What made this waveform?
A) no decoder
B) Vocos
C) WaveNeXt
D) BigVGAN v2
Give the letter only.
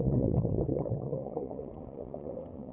C